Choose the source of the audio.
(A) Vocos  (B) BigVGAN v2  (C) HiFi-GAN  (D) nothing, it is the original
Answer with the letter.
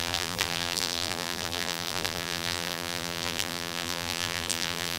B